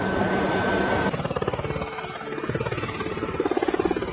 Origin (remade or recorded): recorded